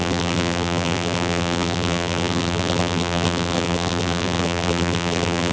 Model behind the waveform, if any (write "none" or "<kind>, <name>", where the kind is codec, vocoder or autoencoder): vocoder, BigVGAN v2